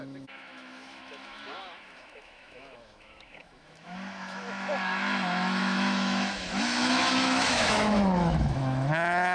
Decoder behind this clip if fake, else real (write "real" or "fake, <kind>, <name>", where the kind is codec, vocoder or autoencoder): fake, autoencoder, DAC-VAE